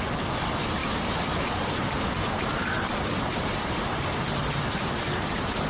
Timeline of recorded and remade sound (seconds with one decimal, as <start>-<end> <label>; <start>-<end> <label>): 0.0-5.7 recorded